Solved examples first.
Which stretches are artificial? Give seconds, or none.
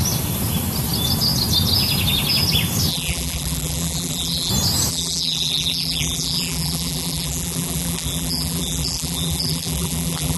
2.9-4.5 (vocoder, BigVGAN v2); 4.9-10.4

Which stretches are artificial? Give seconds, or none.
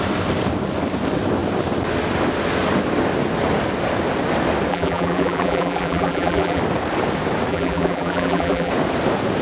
4.7-6.6 (vocoder, BigVGAN v2); 7.5-8.7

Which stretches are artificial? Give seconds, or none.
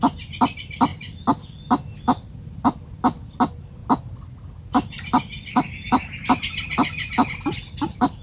0.0-0.9 (vocoder, BigVGAN v2); 2.3-3.8; 5.7-8.2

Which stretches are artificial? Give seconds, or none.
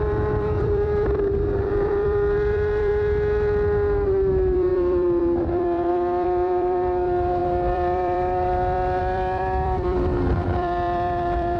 0.0-2.9 (vocoder, BigVGAN v2); 4.3-11.6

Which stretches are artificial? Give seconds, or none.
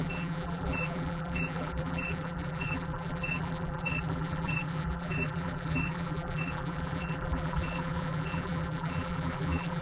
0.0-9.8 (vocoder, BigVGAN v2)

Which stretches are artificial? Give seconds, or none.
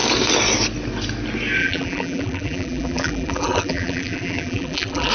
1.6-5.1 (vocoder, BigVGAN v2)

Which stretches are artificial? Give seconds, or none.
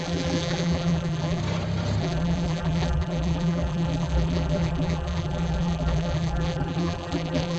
0.0-1.4 (vocoder, BigVGAN v2); 2.0-7.6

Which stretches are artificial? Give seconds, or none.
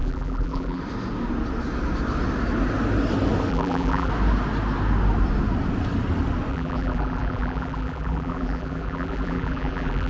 0.0-0.8 (vocoder, BigVGAN v2); 3.5-4.1; 6.5-10.1